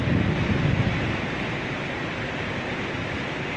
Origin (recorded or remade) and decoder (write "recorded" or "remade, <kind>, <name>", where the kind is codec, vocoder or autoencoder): recorded